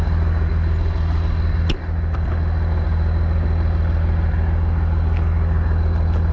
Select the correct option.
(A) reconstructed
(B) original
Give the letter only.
B